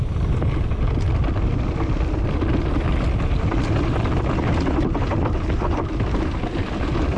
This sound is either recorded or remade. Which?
recorded